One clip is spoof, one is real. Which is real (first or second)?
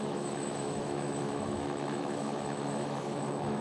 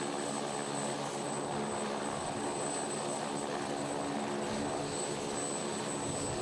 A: second